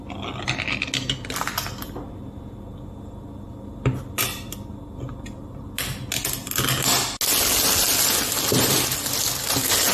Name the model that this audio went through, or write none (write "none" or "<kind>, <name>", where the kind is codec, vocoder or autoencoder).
none